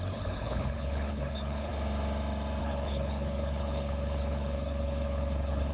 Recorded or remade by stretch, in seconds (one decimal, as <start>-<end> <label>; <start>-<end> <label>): 0.0-1.7 remade; 1.7-2.6 recorded; 2.6-5.7 remade